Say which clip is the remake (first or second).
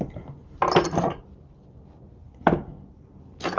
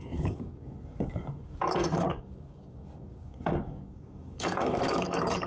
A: second